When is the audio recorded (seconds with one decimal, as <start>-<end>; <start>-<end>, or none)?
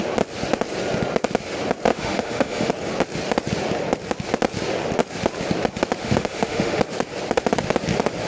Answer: 0.0-1.9; 2.7-6.0; 6.8-8.3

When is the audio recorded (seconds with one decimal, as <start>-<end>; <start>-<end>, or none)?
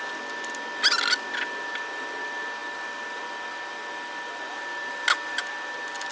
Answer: 0.0-6.1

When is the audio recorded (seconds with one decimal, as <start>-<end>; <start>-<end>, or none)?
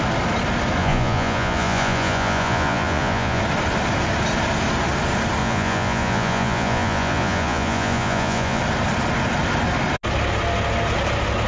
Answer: 0.0-0.8; 3.4-5.4; 8.6-11.5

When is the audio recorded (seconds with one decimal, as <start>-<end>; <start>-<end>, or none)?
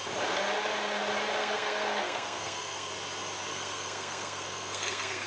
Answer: 0.0-1.4; 2.9-3.5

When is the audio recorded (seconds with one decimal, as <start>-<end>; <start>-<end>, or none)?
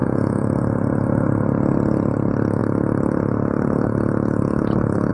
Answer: 0.5-5.1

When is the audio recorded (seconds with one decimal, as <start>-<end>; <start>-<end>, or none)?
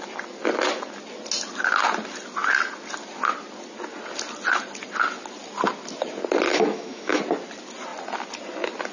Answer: 0.0-6.5; 7.2-8.9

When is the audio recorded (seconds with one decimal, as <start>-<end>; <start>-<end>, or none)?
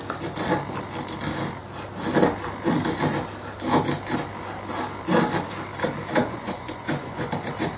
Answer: 0.0-6.2; 7.3-7.8